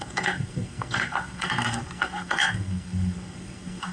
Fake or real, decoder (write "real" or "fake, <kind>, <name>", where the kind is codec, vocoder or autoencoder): fake, codec, SNAC